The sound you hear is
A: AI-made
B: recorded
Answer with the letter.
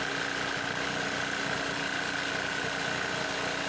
B